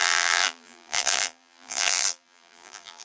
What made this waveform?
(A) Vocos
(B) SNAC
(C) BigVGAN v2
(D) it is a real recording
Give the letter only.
C